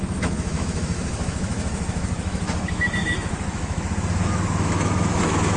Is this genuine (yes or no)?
no